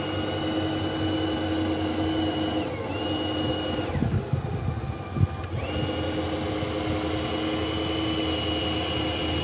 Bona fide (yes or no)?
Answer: yes